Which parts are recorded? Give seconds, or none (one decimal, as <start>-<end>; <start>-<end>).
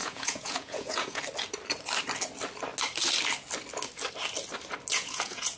1.2-4.9